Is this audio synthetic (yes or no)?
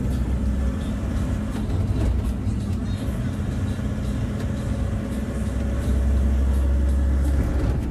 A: no